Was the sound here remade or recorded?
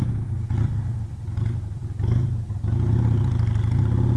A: recorded